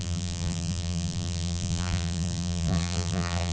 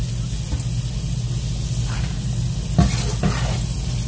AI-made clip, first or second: first